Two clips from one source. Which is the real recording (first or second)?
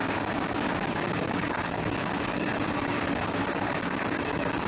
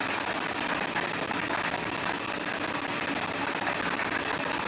second